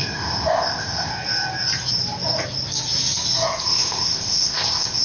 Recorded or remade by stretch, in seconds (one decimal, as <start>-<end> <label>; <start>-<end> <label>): 0.0-1.1 remade; 1.1-3.6 recorded; 3.6-5.0 remade